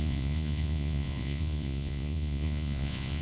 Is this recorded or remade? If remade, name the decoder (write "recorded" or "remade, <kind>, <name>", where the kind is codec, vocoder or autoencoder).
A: remade, vocoder, Vocos